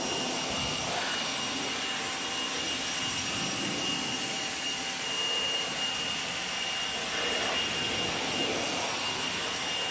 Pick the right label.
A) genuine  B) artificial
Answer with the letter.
A